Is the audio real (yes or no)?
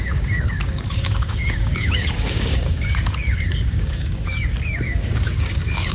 no